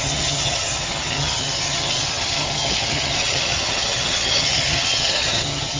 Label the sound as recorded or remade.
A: remade